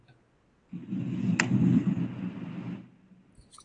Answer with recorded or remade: recorded